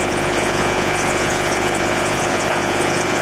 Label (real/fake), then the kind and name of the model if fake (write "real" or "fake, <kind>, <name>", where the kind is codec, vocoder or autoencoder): fake, vocoder, Vocos